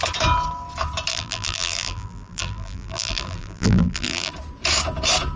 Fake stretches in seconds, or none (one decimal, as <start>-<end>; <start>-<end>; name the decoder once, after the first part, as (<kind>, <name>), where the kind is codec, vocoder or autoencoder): 1.1-4.3 (vocoder, BigVGAN v2)